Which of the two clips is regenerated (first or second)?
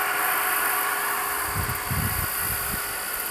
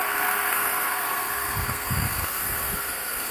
second